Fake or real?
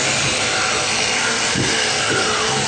real